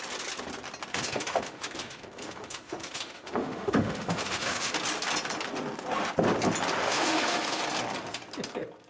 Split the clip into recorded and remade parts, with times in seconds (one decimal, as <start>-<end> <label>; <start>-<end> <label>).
0.0-0.9 recorded; 0.9-4.7 remade; 4.7-6.8 recorded; 6.8-7.6 remade; 7.6-8.9 recorded